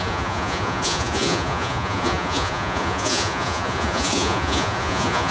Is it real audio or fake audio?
fake